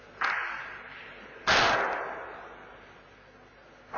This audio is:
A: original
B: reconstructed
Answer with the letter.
A